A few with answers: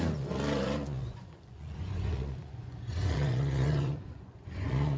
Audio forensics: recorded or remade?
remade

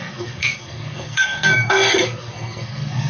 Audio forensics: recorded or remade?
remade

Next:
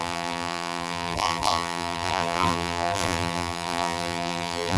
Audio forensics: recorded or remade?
remade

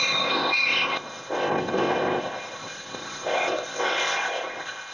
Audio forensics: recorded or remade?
remade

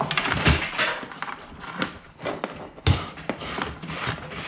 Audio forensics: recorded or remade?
recorded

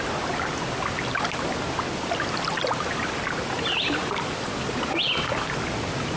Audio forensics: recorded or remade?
recorded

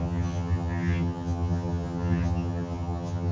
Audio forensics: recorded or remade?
remade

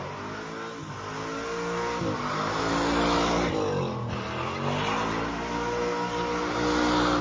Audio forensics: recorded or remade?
recorded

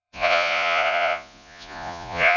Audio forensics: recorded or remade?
remade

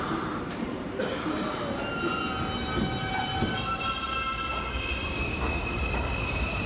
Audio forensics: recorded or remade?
remade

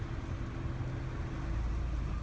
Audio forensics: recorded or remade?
recorded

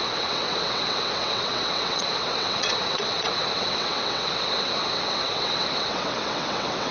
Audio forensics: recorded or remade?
remade